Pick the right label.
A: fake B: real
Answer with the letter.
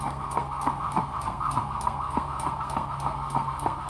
A